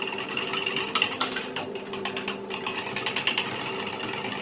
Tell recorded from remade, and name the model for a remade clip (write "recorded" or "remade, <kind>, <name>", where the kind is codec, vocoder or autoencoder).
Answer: recorded